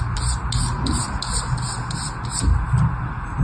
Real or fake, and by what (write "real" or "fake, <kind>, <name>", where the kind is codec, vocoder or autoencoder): real